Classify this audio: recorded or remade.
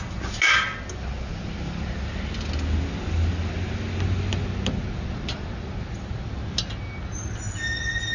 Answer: recorded